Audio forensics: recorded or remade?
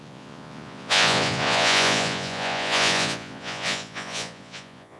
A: remade